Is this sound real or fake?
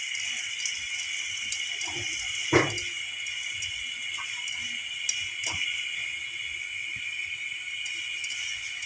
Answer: real